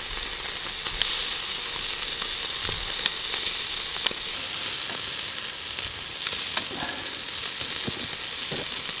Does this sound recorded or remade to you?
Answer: recorded